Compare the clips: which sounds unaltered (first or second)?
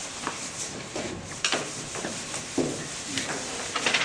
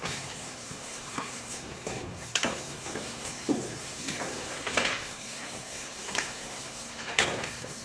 first